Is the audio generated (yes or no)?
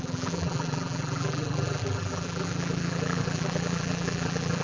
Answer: yes